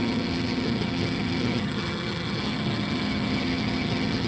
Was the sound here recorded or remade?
remade